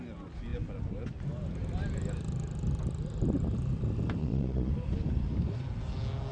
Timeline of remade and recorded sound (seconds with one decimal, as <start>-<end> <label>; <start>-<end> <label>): 0.0-4.2 recorded; 4.2-4.7 remade; 4.7-6.3 recorded